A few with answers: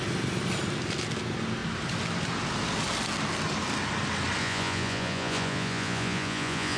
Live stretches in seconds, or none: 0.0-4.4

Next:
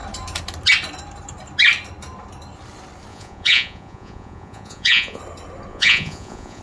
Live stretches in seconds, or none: 0.0-3.1; 5.2-5.7

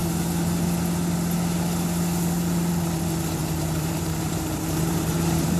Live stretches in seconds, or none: 0.0-3.4

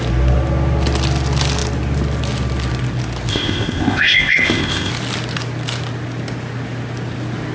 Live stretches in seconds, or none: 0.0-3.3; 4.9-7.5

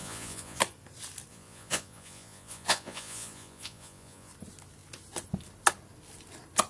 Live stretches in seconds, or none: 0.6-1.3; 4.3-6.7

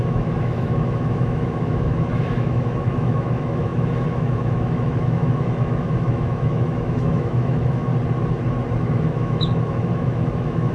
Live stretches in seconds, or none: 7.9-8.8

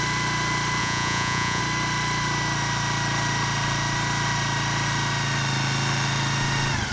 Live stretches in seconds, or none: 0.0-0.8; 1.6-6.9

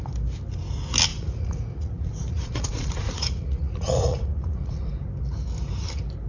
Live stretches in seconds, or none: 0.0-1.1; 4.9-6.3